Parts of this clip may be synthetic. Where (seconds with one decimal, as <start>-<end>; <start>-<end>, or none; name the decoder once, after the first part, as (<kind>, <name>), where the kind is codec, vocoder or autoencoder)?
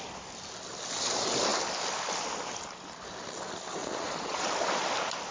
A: 3.8-4.5 (vocoder, Vocos)